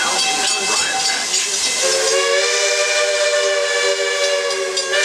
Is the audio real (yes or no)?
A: yes